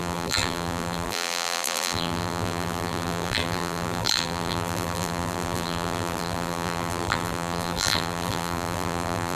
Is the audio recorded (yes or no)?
no